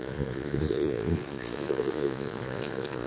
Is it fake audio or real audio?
fake